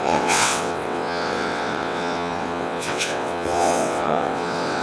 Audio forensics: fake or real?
fake